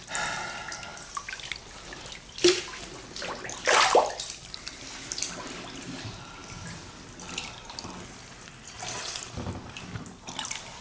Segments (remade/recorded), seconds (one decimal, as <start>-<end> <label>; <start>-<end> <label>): 0.0-10.8 recorded